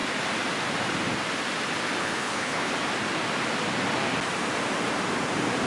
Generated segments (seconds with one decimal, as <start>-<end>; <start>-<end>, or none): 2.0-2.7